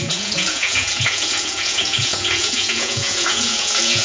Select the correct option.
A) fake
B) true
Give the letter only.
A